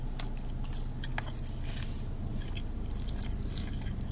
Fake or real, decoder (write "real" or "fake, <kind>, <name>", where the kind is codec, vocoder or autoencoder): real